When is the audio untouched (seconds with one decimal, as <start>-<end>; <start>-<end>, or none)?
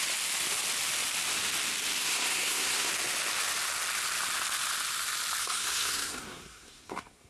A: 0.0-2.0; 2.9-5.4